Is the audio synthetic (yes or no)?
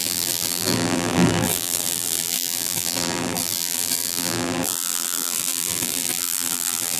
yes